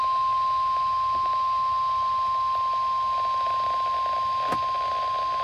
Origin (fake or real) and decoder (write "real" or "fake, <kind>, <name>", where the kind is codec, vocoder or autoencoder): real